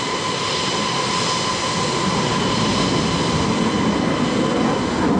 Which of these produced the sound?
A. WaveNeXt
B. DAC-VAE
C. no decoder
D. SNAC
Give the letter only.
C